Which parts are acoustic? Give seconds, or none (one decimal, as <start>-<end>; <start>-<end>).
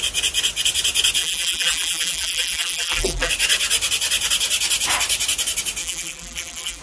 0.0-1.2; 3.3-5.8